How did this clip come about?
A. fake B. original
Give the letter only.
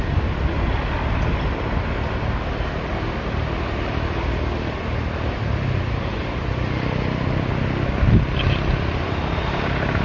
B